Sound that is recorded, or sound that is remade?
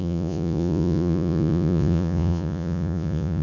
remade